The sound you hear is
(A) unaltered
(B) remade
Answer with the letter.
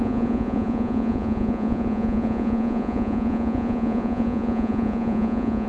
B